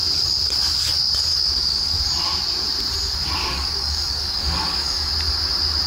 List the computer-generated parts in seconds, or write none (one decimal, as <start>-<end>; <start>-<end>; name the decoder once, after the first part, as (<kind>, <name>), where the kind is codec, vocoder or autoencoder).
1.3-2.0 (codec, DAC); 3.4-5.1